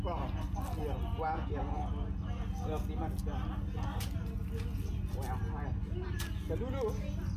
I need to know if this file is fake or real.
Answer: real